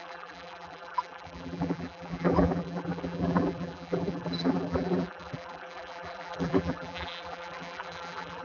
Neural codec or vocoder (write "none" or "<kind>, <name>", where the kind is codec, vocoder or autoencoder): vocoder, BigVGAN v2